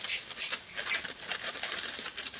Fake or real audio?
real